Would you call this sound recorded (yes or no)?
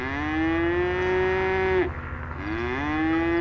yes